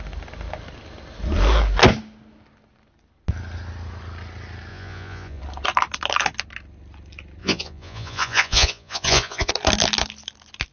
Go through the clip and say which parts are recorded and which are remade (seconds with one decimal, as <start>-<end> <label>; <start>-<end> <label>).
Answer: 0.0-4.7 recorded; 4.7-5.4 remade; 5.4-7.4 recorded; 7.4-9.5 remade; 9.5-10.7 recorded